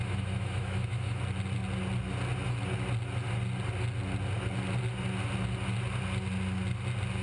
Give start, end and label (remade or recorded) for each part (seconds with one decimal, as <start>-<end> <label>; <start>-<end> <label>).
0.0-1.2 remade; 1.2-7.2 recorded